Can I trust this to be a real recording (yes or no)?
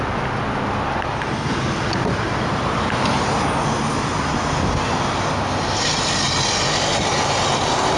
yes